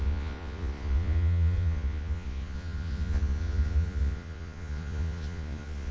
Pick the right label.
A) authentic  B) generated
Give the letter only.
B